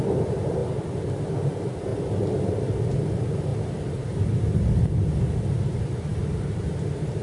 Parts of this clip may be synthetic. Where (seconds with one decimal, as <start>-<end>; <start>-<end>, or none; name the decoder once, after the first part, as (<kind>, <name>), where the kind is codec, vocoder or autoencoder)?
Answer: 3.5-4.8 (vocoder, BigVGAN v2)